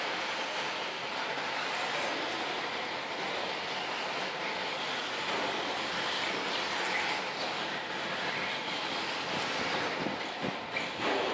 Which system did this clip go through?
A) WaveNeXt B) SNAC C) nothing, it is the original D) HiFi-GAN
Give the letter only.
C